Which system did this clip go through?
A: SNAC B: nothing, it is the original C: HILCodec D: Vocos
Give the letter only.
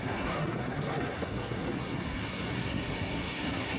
A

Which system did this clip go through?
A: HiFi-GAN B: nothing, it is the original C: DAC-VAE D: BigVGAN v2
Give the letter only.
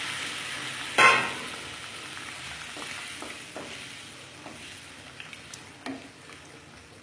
B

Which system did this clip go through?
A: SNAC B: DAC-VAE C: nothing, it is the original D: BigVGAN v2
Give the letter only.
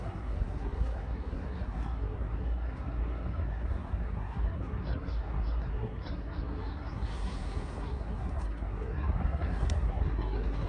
A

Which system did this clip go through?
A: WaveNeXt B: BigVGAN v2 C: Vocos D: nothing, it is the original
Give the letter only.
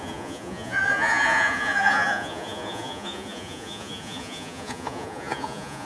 C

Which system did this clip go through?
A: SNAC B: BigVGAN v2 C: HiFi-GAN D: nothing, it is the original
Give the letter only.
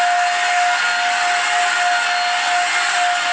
D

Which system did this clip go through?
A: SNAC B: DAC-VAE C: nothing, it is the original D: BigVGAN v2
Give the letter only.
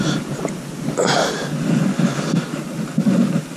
C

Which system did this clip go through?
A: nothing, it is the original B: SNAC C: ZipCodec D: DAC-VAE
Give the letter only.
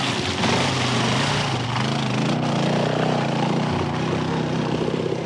A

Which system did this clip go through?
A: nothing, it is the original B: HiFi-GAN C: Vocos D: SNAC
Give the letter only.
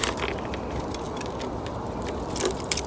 A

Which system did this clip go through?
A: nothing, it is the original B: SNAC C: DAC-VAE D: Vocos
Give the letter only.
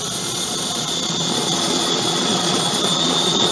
D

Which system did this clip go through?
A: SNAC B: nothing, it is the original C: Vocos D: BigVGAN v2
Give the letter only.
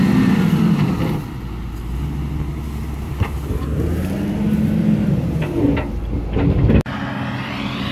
B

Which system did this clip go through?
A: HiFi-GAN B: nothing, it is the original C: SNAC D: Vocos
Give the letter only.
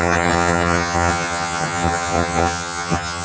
A